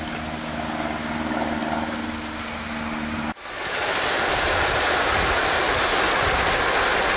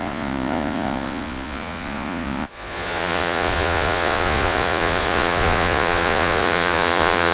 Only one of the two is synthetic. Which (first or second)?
second